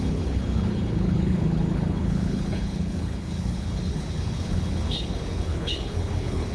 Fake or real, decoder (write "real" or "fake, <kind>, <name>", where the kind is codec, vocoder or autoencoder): fake, codec, HILCodec